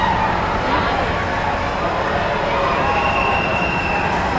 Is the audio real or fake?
real